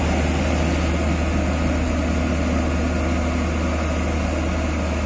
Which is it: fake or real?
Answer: real